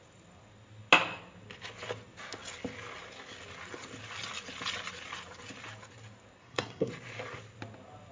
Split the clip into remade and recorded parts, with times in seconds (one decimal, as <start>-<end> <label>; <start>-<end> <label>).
0.0-6.4 recorded; 6.4-6.9 remade; 6.9-8.1 recorded